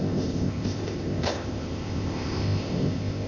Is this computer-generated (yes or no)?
yes